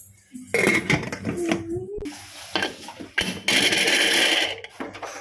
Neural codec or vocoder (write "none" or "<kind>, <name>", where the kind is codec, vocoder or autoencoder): none